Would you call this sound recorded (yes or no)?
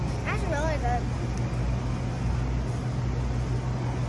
yes